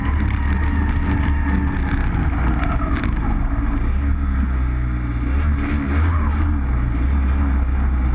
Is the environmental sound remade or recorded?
recorded